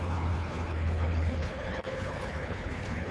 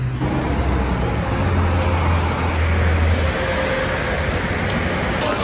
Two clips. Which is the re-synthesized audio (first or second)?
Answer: first